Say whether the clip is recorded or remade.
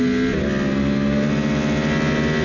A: recorded